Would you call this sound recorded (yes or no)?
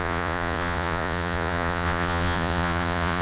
no